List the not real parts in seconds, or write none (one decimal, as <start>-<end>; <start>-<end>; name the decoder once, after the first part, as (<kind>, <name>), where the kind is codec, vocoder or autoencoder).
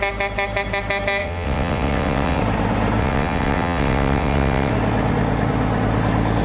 1.2-2.4 (vocoder, WaveNeXt); 3.0-4.7